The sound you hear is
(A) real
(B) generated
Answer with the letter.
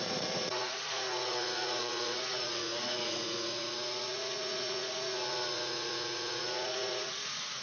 B